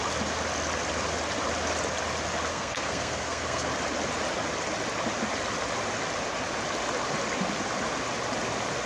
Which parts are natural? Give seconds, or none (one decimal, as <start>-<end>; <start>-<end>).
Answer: 0.0-2.5; 3.7-8.9